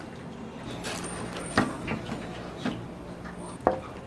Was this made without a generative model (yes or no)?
yes